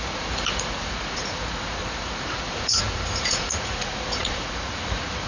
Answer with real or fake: fake